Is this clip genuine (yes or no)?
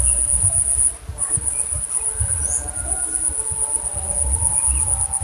yes